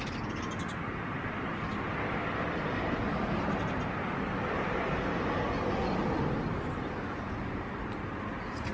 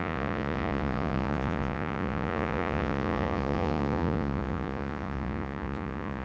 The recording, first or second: first